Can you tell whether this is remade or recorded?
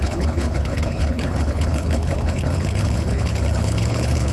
remade